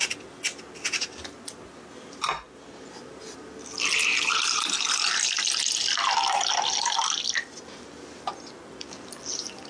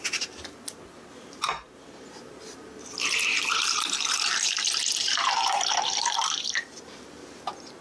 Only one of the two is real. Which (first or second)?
first